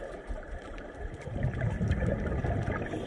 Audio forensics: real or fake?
real